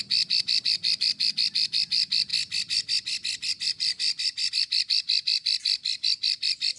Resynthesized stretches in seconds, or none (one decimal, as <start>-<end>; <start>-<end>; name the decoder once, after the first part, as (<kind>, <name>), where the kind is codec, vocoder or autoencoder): none